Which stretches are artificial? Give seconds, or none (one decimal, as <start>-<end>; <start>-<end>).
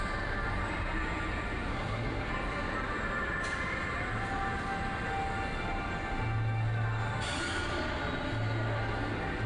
1.7-2.3